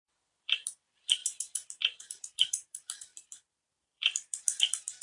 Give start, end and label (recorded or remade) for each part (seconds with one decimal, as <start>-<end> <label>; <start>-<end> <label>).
0.0-1.2 remade; 1.2-2.1 recorded; 2.1-5.0 remade